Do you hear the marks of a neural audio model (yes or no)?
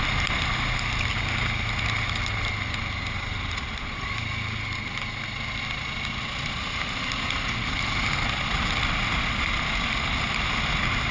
no